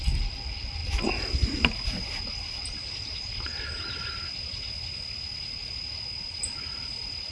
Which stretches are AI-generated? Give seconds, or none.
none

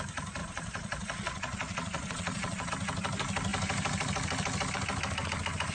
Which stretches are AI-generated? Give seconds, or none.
0.4-2.7 (vocoder, Vocos)

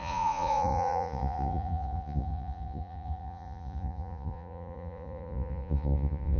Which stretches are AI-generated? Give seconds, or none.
0.0-6.4 (vocoder, Vocos)